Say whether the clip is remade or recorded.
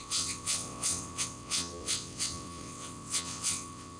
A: remade